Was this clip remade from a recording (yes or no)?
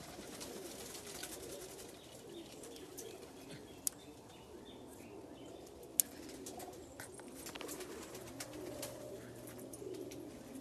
no